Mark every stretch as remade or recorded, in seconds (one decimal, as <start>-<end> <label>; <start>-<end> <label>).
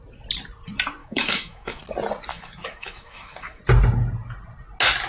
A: 0.0-1.0 recorded; 1.0-1.8 remade; 1.8-2.3 recorded; 2.3-3.6 remade; 3.6-5.1 recorded